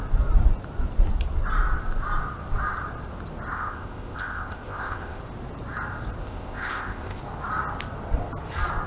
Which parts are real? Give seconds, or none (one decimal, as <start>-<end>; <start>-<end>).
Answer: 0.0-3.5; 5.2-6.2; 7.2-8.9